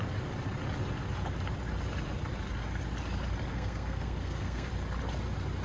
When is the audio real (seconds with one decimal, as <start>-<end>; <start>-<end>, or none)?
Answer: 0.0-3.5; 4.7-5.6